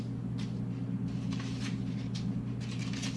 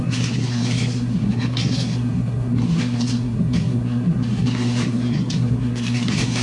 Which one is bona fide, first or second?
first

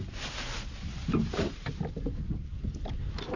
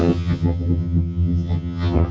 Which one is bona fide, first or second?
first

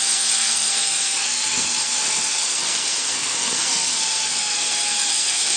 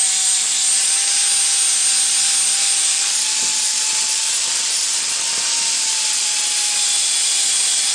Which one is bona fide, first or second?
second